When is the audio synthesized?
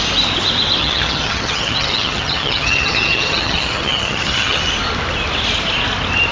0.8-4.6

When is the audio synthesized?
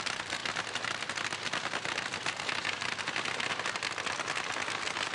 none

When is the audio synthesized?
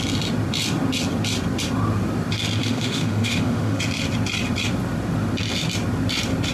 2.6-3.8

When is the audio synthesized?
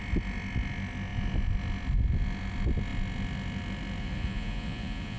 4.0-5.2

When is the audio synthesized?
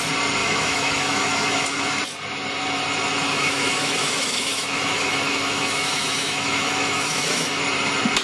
0.4-2.0; 3.3-7.6